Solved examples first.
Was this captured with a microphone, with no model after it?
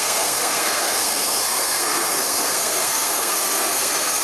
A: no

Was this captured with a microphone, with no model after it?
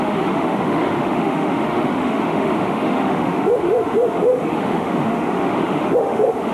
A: no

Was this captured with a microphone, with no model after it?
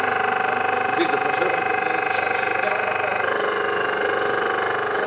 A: yes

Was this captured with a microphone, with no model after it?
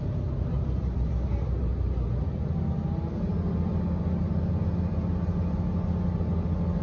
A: yes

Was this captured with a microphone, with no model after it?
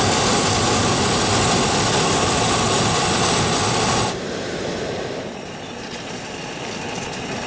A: yes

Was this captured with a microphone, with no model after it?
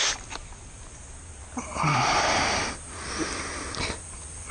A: yes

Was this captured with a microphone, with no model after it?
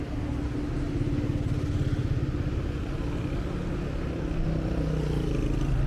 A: yes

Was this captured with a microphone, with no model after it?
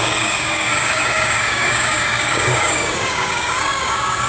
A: no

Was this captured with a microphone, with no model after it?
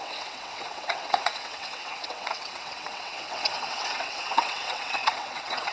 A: no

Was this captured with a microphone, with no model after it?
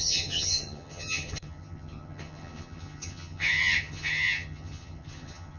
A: no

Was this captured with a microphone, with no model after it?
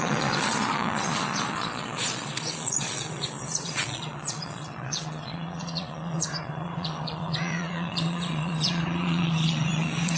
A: no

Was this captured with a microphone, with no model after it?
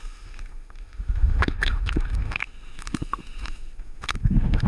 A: no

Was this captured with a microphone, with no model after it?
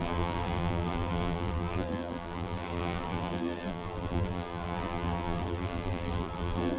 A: no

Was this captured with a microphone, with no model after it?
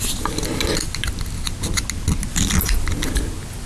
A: yes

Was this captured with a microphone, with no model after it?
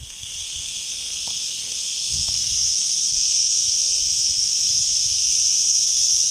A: no